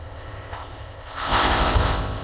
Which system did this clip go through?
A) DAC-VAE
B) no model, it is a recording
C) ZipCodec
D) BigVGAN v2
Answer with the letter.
C